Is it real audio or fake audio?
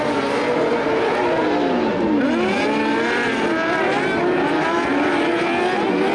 real